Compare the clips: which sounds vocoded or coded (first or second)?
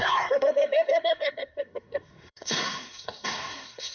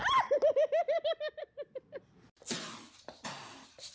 first